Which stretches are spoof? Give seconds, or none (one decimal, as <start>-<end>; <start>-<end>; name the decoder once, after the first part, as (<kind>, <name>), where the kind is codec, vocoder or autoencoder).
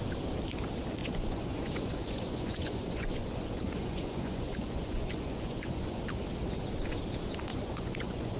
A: 1.0-6.0 (vocoder, Vocos); 7.5-8.4